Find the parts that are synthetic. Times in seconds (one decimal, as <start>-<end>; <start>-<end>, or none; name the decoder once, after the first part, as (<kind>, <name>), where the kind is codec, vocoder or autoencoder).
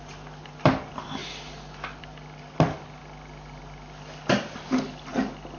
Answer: 0.0-1.2 (vocoder, BigVGAN v2); 2.0-3.0; 3.6-5.1